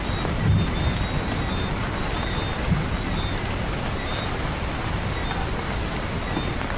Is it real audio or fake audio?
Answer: real